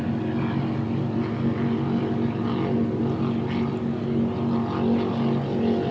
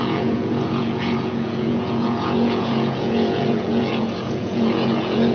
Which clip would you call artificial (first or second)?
second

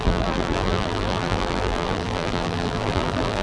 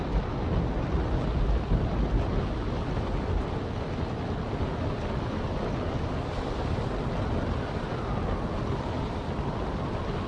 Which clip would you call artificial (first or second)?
first